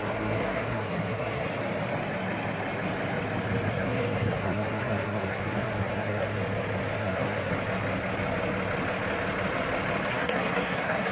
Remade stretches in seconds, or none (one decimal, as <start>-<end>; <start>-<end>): 0.0-1.5; 3.7-6.4; 7.0-7.5; 10.1-11.1